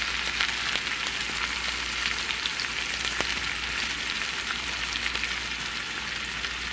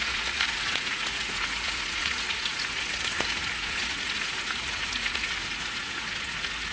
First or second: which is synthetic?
second